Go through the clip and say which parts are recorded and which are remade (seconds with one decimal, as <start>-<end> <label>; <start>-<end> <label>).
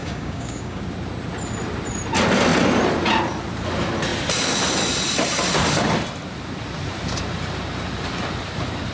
0.0-0.8 remade; 0.8-8.9 recorded